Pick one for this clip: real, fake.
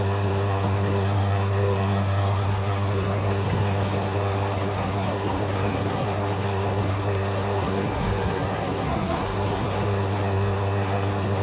fake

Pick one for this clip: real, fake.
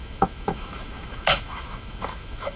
fake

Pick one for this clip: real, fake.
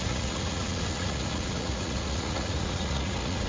fake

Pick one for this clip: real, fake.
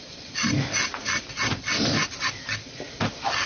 real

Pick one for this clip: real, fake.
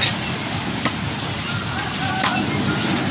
real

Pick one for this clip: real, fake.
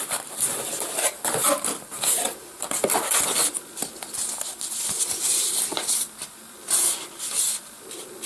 fake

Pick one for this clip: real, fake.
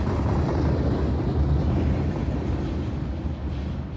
real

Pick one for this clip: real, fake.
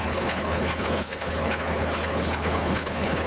fake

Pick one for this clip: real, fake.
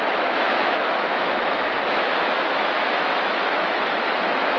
fake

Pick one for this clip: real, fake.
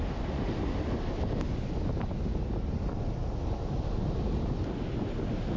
real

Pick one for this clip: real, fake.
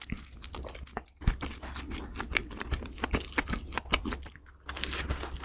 real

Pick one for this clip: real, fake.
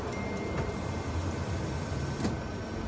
real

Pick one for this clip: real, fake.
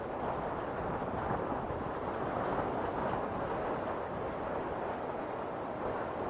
real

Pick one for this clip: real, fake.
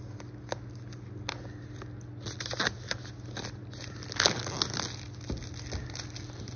real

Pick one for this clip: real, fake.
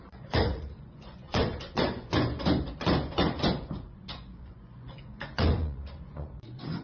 fake